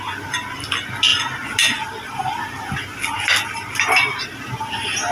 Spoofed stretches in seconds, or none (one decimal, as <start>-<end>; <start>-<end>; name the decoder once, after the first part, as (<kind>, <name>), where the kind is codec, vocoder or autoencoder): none